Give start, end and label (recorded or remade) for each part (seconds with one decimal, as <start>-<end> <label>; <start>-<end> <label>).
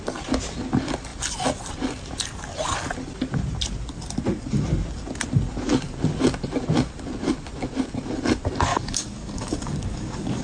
0.0-8.7 recorded; 8.7-10.4 remade